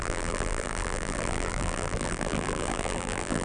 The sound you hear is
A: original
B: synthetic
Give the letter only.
B